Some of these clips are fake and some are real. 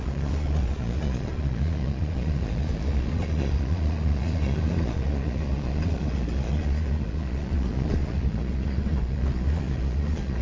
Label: fake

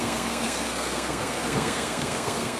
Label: fake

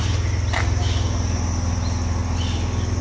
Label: real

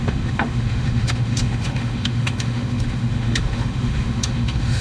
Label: fake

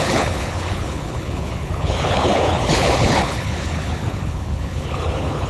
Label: fake